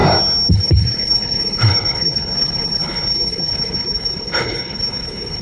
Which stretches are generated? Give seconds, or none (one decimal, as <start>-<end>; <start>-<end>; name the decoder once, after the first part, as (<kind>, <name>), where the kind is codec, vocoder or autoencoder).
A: 0.5-5.4 (codec, HILCodec)

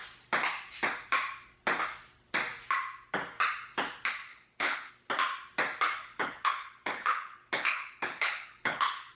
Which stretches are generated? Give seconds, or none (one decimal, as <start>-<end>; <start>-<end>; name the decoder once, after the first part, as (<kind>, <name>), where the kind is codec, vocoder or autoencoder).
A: 4.3-4.9 (codec, HILCodec); 6.0-9.1

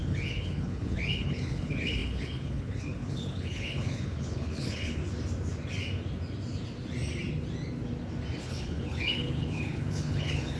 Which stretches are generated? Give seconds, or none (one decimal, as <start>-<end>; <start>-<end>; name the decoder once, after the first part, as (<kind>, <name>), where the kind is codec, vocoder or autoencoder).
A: 0.0-5.0 (codec, HILCodec); 8.4-10.6

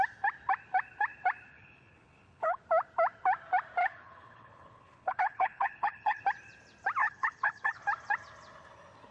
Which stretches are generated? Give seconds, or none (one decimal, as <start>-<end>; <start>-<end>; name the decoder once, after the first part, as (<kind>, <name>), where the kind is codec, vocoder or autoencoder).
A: 1.5-2.6 (codec, HILCodec); 3.8-6.2; 7.0-7.8